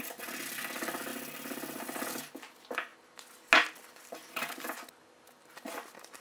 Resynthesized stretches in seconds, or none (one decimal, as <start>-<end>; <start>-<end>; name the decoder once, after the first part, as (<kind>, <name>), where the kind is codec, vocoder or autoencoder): 0.0-2.9 (vocoder, BigVGAN v2)